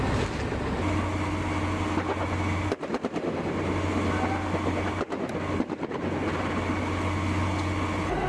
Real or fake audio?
real